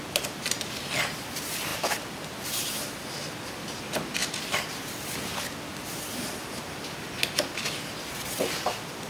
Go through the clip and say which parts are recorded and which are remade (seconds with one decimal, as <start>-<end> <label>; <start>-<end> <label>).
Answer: 0.0-1.7 recorded; 1.7-2.5 remade; 2.5-4.2 recorded; 4.2-5.4 remade; 5.4-9.1 recorded